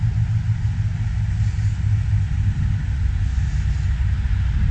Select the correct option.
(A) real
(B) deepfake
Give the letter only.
A